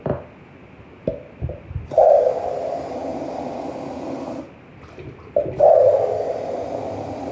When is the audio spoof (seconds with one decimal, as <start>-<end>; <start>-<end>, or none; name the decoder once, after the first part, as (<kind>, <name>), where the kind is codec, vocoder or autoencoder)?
none